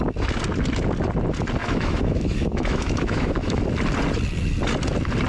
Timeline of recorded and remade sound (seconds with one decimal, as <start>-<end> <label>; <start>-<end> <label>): 0.0-1.6 recorded; 1.6-3.6 remade; 3.6-5.3 recorded